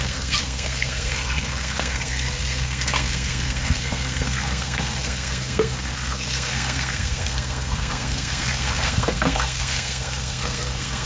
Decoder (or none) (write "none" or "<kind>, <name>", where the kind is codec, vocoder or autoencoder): codec, SNAC